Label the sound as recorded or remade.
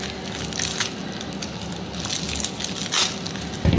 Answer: recorded